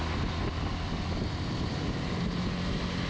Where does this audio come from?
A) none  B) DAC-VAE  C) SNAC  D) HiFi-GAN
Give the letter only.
A